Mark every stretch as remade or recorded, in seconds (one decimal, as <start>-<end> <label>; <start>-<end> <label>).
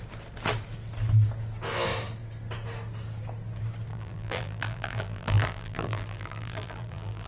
0.0-3.9 recorded; 3.9-7.3 remade